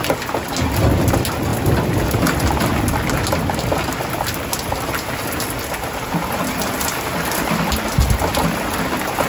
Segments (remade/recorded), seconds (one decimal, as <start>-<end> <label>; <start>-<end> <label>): 0.0-9.3 recorded